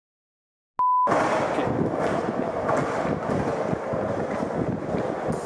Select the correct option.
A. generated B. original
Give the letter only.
B